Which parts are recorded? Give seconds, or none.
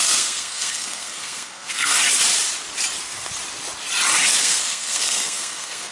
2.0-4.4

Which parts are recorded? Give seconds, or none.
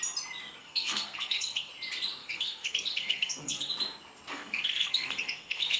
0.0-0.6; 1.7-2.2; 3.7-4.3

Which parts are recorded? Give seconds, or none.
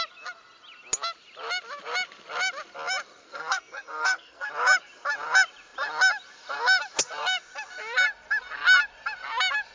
0.0-3.2; 4.5-9.7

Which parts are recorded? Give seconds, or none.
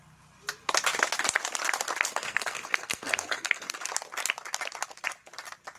0.0-2.1; 3.7-5.8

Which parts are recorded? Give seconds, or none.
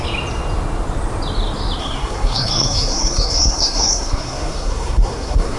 0.0-1.8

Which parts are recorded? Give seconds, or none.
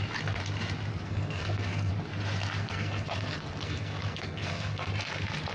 0.0-0.9; 1.9-2.6; 4.9-5.5